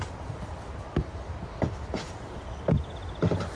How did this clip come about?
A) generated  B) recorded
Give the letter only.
B